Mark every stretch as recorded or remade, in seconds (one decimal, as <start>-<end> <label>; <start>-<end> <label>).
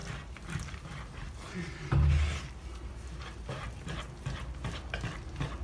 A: 0.0-5.6 recorded